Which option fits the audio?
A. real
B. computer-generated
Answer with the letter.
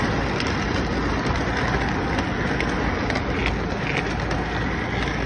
A